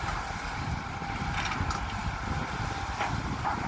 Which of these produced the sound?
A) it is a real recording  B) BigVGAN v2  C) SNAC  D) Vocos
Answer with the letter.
A